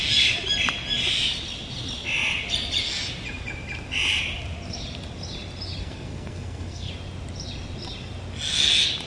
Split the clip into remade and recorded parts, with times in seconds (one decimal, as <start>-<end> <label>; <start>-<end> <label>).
0.0-5.8 recorded; 5.8-6.9 remade; 6.9-9.1 recorded